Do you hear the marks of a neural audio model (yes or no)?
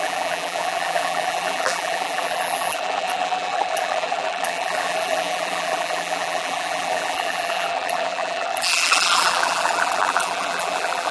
yes